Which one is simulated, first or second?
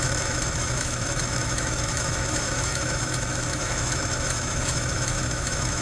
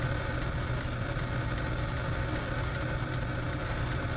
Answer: first